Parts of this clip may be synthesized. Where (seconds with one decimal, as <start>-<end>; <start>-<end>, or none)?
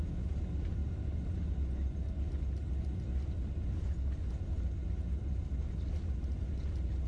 none